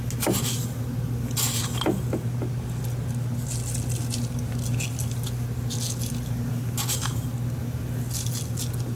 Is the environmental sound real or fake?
real